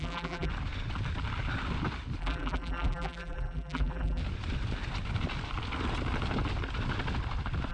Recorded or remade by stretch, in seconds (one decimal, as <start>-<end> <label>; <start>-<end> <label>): 0.0-0.5 remade; 0.5-2.2 recorded; 2.2-4.2 remade; 4.2-7.7 recorded